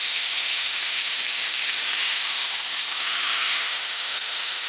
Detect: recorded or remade remade